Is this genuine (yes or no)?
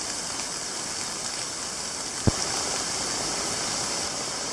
yes